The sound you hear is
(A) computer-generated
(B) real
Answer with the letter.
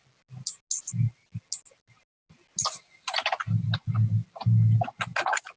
B